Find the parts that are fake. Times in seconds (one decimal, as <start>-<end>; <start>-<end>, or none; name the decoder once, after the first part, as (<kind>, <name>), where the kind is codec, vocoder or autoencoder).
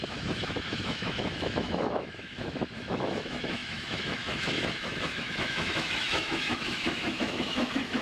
0.0-8.0 (autoencoder, DAC-VAE)